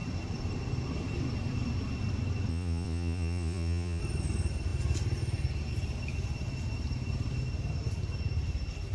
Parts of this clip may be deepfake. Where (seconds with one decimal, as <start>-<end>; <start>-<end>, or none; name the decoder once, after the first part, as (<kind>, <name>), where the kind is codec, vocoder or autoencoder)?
2.5-4.0 (vocoder, Vocos)